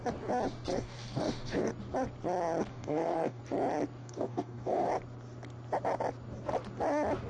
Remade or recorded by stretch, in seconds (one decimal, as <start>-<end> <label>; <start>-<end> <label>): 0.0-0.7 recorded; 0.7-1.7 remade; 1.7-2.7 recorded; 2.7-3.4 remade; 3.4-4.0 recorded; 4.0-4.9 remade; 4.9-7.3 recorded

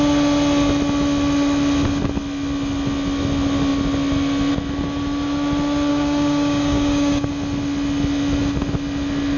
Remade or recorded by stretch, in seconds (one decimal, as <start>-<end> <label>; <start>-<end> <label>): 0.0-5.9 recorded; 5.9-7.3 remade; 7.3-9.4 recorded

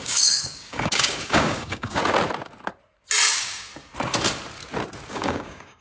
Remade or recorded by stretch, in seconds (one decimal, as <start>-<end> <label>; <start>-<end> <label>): 0.0-2.0 remade; 2.0-3.3 recorded; 3.3-3.7 remade; 3.7-5.1 recorded; 5.1-5.8 remade